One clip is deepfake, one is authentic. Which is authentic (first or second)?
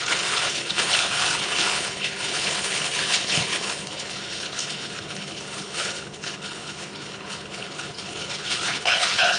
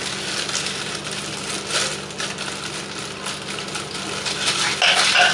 second